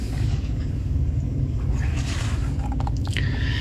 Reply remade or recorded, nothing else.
remade